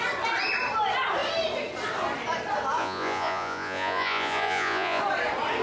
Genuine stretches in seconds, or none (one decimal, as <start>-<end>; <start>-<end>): 0.0-2.8; 5.0-5.6